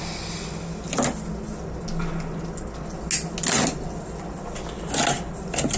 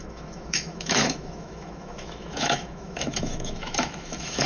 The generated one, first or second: second